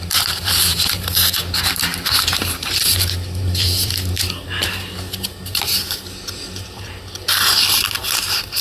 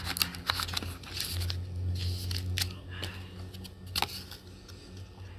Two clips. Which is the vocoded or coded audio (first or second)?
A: first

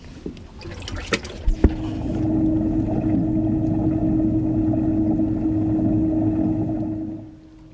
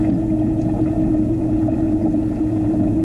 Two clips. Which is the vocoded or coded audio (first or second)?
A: second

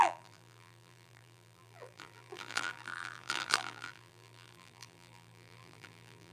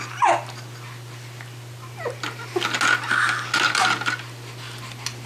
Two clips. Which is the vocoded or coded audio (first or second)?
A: first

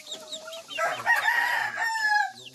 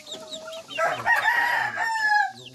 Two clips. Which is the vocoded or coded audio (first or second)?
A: first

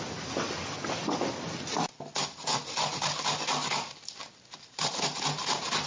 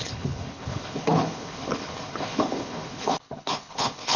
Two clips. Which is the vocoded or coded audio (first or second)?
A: second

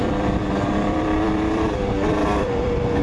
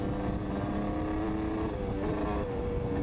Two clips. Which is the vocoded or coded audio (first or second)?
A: first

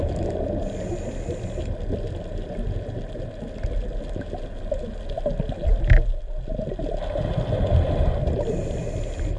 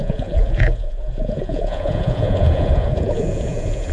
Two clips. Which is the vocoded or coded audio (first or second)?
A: second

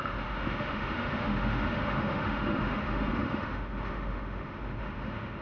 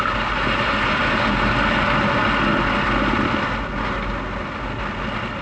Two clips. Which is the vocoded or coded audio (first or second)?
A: first